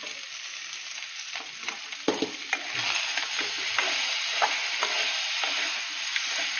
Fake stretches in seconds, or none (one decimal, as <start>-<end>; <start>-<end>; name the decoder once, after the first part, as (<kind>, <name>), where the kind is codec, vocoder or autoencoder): none